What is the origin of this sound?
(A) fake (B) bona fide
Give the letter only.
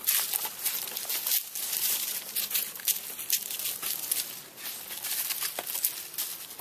B